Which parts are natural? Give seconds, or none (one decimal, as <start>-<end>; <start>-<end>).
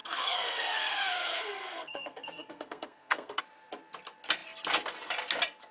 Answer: 3.4-5.7